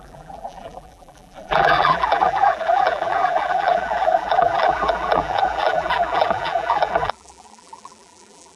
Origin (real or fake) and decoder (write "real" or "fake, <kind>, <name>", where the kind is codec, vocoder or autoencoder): fake, vocoder, BigVGAN v2